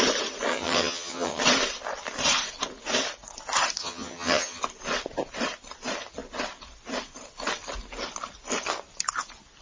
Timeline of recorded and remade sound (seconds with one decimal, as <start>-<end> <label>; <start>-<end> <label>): 0.0-0.5 recorded; 0.5-1.4 remade; 1.4-3.8 recorded; 3.8-4.6 remade; 4.6-9.6 recorded